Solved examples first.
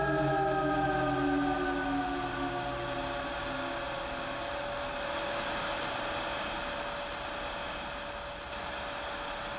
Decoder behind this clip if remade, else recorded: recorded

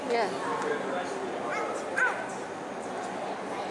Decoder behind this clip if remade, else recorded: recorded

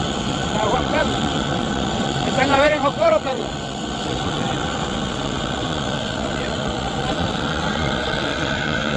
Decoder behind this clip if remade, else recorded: remade, vocoder, WaveNeXt